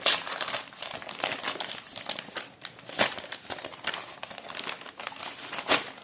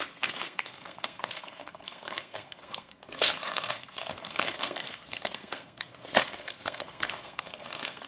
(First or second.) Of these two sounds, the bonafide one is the first